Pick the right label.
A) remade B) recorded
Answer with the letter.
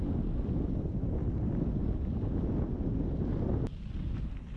B